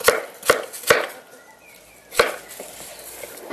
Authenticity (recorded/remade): recorded